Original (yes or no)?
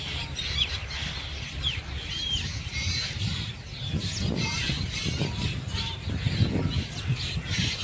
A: yes